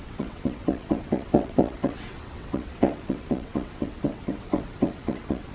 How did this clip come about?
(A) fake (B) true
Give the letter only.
A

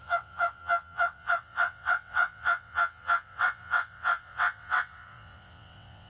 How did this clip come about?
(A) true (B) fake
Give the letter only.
B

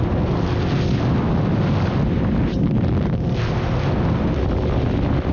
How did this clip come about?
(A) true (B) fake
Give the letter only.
A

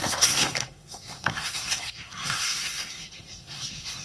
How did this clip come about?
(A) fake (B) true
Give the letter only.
A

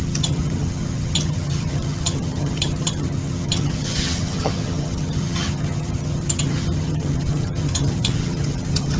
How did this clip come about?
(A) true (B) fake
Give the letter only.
B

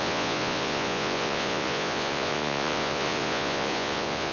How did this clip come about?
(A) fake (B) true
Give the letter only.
A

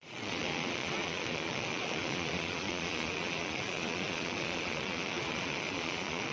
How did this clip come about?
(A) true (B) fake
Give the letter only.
B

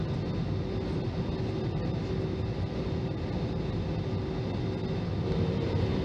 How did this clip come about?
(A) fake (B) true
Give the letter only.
B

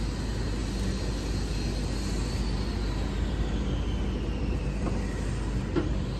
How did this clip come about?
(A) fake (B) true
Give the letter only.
B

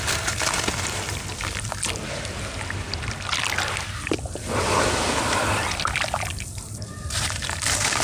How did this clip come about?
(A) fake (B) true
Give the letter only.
A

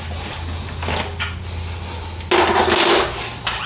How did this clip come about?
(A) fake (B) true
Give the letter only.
B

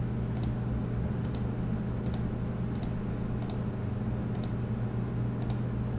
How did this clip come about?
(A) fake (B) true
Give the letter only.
B